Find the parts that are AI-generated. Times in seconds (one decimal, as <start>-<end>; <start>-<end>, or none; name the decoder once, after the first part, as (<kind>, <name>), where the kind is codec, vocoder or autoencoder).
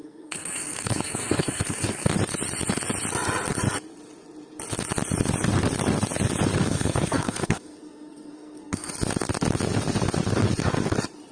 0.0-2.1 (codec, SNAC); 6.6-8.9